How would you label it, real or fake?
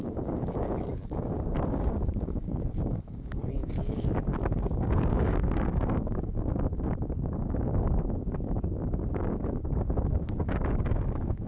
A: fake